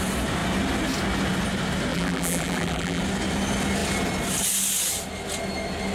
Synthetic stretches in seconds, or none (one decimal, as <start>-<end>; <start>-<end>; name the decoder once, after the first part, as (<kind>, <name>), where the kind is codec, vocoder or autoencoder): 1.9-3.0 (vocoder, BigVGAN v2)